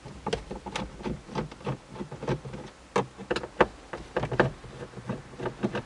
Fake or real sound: real